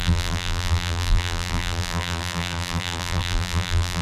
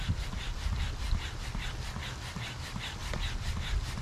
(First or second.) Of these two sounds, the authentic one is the second